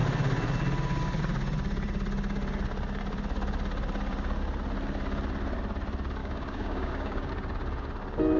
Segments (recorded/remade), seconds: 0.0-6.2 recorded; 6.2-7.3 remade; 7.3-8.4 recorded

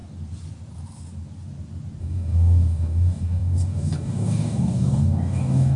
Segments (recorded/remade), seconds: 0.0-2.0 recorded; 2.0-5.8 remade

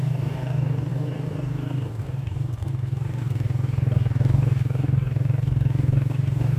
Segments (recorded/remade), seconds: 0.0-6.6 remade

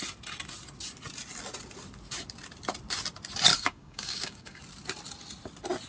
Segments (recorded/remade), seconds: 0.0-3.5 recorded; 3.5-4.6 remade; 4.6-5.9 recorded

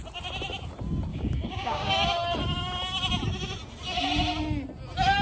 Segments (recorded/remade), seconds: 0.0-1.1 recorded; 1.1-1.9 remade; 1.9-5.2 recorded